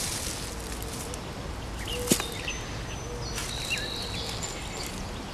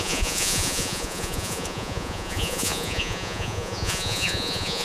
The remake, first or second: second